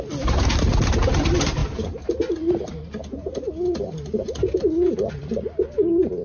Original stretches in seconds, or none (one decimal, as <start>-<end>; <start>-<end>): 0.0-6.2